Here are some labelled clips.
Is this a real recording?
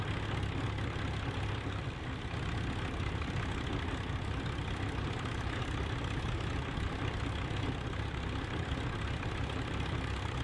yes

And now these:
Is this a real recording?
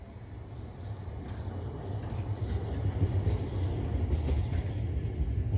yes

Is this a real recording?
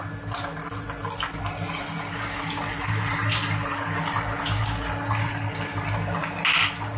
yes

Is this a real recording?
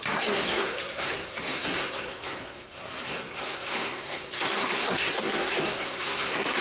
no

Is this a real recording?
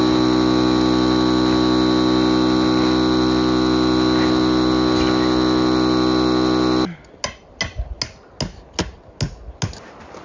yes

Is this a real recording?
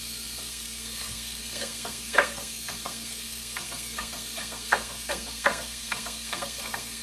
no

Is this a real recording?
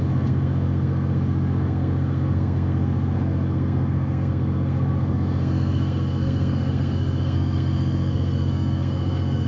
no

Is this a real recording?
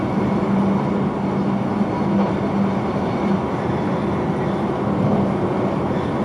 yes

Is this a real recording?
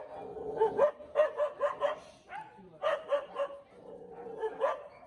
yes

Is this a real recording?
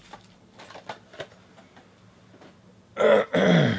yes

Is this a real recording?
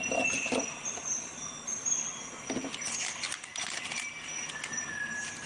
yes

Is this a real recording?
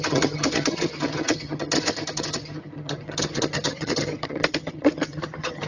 no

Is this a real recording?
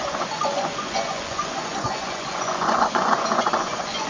no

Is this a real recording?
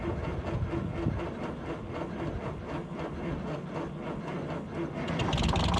yes